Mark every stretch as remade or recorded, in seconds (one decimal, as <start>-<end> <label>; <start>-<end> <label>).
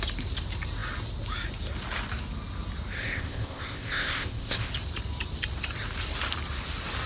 0.0-3.0 recorded; 3.0-4.7 remade; 4.7-7.1 recorded